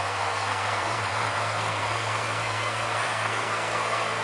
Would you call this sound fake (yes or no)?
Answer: yes